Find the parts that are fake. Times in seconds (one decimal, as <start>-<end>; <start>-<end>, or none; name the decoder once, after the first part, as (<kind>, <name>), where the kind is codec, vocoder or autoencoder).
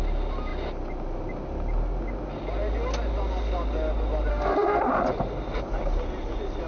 4.3-4.8 (autoencoder, DAC-VAE)